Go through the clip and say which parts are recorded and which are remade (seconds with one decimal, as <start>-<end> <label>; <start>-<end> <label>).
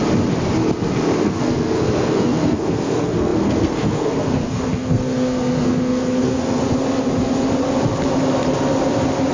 0.0-1.2 recorded; 1.2-6.6 remade; 6.6-9.3 recorded